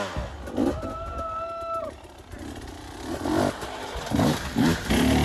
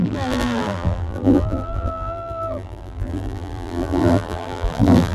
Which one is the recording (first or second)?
first